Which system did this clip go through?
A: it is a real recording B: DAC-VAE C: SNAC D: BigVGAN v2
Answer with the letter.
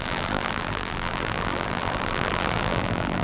D